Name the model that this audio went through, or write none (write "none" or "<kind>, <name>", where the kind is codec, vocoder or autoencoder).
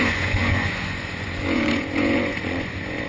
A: vocoder, Vocos